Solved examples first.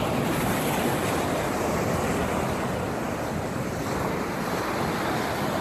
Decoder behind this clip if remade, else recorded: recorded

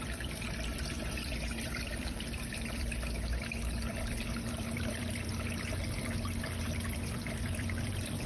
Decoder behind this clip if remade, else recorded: remade, vocoder, BigVGAN v2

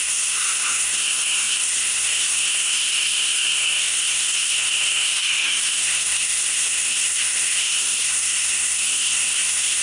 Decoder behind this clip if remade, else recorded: remade, codec, SNAC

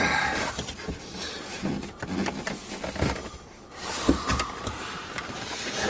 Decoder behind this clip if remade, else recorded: recorded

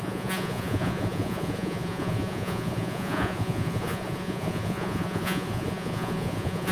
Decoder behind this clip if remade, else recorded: remade, vocoder, Vocos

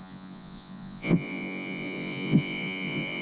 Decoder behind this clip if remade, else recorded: remade, vocoder, Vocos